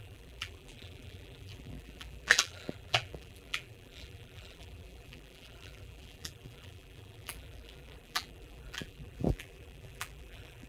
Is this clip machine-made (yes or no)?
yes